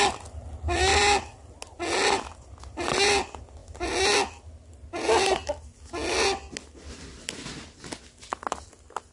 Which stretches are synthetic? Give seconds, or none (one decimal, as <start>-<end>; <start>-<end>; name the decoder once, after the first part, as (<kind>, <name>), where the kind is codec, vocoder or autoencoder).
none